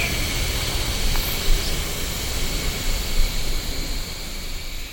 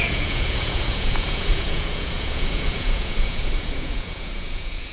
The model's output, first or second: second